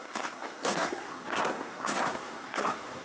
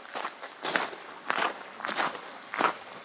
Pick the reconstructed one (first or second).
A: first